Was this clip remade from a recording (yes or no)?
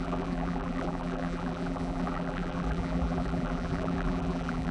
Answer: yes